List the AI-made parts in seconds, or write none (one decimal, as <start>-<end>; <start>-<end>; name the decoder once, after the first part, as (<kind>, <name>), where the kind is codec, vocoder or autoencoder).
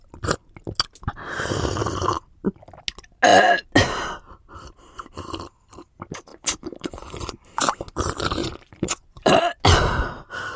6.3-7.3 (vocoder, Vocos); 8.4-9.4